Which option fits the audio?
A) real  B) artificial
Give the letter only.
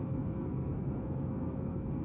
B